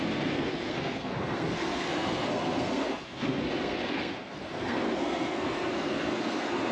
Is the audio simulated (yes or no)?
yes